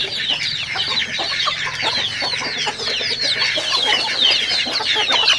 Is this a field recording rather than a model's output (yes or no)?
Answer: yes